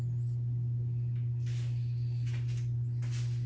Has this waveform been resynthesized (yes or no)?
no